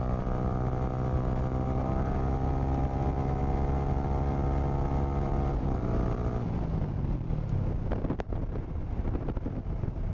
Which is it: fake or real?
real